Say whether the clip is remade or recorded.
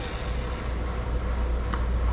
recorded